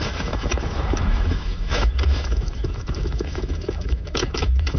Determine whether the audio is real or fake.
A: fake